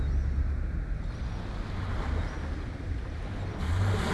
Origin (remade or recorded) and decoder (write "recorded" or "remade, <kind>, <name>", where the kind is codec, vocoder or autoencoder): recorded